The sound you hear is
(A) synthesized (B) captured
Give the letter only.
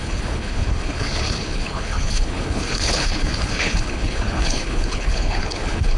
A